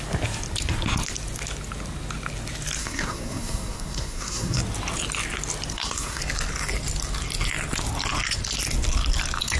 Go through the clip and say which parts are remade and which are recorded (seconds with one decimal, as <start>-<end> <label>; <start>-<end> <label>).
0.0-2.8 recorded; 2.8-4.6 remade; 4.6-5.7 recorded; 5.7-6.2 remade; 6.2-9.6 recorded